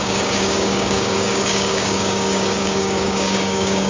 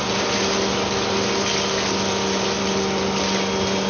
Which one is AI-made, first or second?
first